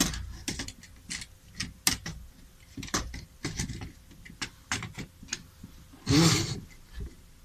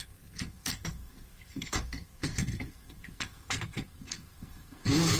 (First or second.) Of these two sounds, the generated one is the second